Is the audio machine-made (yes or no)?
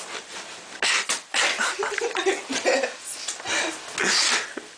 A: no